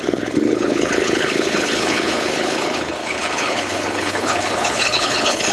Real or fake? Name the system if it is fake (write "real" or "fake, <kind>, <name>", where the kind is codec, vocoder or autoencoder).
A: fake, codec, HILCodec